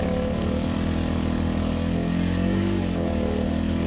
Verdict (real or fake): fake